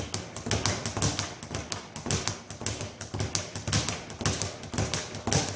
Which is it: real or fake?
real